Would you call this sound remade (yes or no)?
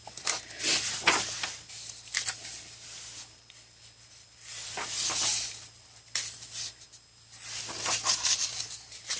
no